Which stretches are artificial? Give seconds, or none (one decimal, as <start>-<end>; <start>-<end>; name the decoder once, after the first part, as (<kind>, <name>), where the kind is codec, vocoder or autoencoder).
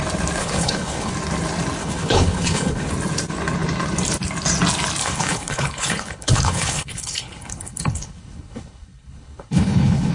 0.4-1.1 (codec, HILCodec); 1.8-2.9; 5.0-10.1